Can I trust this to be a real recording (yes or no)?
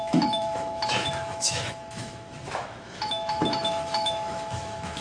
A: no